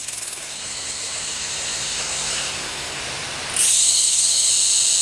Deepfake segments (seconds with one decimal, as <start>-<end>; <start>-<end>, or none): 0.0-3.0; 3.7-4.5